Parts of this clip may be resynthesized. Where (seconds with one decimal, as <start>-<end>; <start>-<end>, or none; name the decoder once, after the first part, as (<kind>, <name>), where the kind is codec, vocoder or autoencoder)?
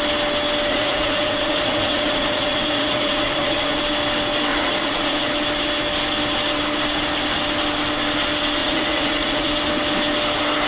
0.7-3.8 (vocoder, Vocos); 4.5-5.3; 8.6-9.5